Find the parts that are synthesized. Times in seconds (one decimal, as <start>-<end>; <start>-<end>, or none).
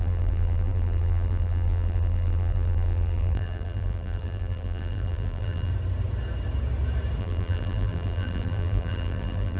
0.0-5.7; 7.2-9.6